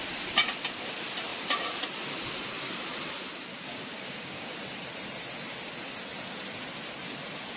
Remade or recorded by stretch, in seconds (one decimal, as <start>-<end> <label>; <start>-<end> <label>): 0.0-3.5 recorded; 3.5-4.6 remade; 4.6-7.6 recorded